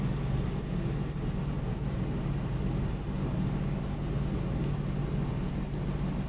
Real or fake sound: real